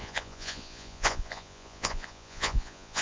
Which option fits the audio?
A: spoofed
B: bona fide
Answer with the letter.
A